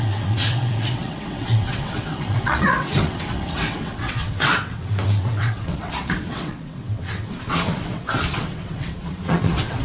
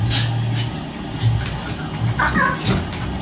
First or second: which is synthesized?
first